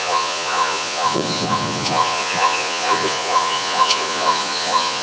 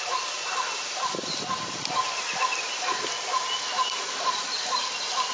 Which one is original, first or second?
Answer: second